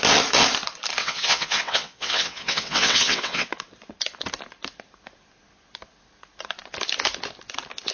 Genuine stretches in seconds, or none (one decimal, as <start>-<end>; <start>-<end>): 0.0-1.0; 3.5-7.9